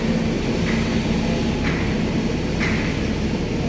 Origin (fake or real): real